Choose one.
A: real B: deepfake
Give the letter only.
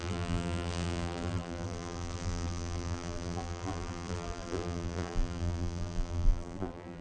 B